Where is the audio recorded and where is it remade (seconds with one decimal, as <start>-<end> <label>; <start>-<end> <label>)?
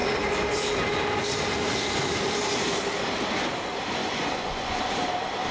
0.0-4.0 recorded; 4.0-4.8 remade; 4.8-5.5 recorded